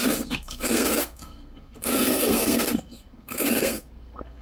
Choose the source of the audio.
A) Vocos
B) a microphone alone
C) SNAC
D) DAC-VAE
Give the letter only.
C